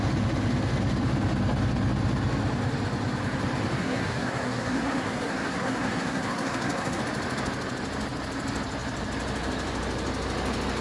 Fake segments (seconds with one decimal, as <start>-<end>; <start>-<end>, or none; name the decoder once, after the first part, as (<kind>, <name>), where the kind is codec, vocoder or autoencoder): 3.8-7.0 (codec, SNAC)